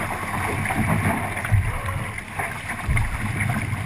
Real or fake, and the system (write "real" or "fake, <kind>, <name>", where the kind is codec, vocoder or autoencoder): real